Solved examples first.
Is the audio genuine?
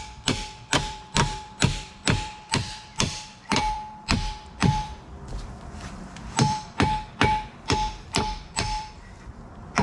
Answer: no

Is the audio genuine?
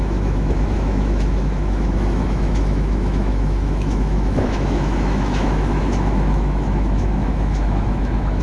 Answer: no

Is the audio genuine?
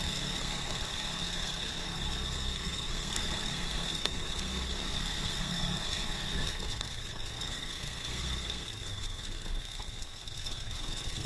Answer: no